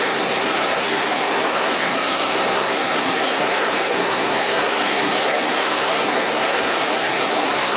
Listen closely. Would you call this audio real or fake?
fake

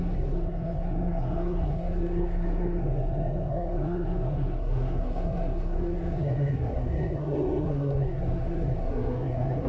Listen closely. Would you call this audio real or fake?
fake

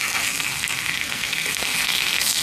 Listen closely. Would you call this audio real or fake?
fake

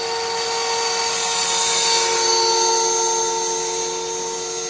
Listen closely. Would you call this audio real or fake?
real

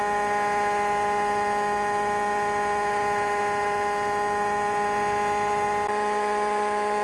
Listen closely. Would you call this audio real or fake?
real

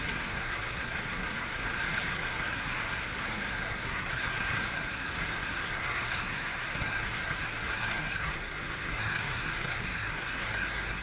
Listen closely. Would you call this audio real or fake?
fake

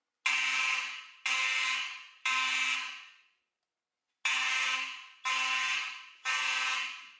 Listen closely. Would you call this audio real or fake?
real